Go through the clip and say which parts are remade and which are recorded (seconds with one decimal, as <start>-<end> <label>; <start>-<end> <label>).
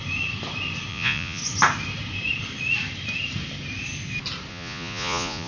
0.0-0.9 recorded; 0.9-1.4 remade; 1.4-4.5 recorded; 4.5-5.5 remade